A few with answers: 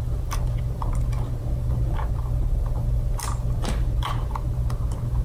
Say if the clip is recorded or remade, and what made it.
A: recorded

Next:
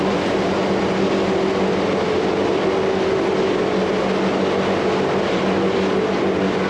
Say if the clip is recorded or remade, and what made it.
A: recorded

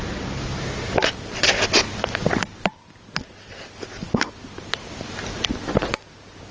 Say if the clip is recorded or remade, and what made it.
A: recorded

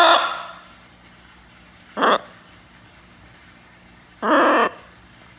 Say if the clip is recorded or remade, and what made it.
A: recorded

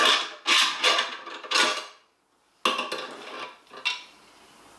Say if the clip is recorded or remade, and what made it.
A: recorded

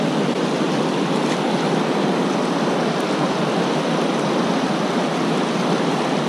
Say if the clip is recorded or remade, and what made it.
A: recorded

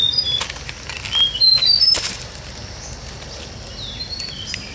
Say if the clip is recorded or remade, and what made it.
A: recorded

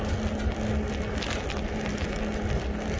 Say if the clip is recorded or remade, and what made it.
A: recorded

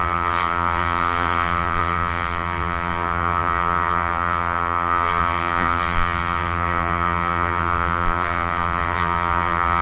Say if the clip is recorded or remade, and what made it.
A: remade, vocoder, BigVGAN v2